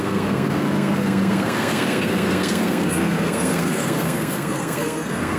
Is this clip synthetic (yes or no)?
yes